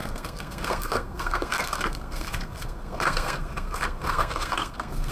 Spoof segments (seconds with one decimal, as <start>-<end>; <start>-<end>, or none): 0.0-5.1